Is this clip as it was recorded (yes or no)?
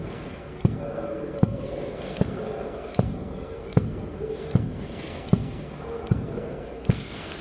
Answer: no